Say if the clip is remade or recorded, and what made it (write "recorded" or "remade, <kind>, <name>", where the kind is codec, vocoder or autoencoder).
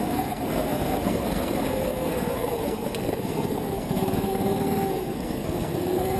remade, codec, SNAC